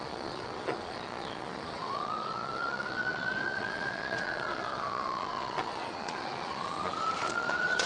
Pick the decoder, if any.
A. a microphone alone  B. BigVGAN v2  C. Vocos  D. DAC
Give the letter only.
C